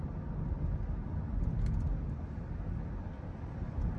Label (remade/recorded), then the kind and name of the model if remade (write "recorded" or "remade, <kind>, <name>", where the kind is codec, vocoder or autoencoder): recorded